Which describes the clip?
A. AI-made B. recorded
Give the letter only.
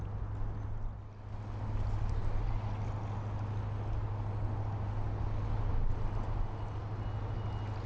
B